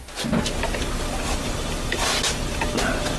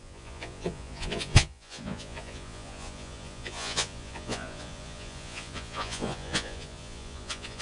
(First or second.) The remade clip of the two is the second